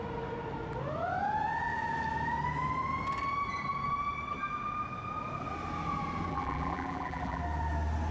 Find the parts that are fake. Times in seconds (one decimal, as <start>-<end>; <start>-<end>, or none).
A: 6.3-7.4